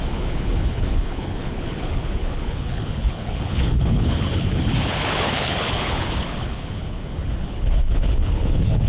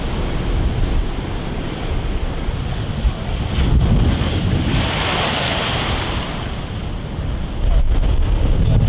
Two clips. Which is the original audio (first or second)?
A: second